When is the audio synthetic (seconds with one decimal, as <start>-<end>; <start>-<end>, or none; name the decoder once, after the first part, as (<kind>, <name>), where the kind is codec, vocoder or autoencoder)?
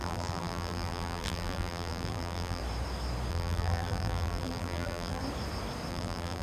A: 0.0-2.6 (vocoder, BigVGAN v2); 3.3-5.2; 5.9-6.4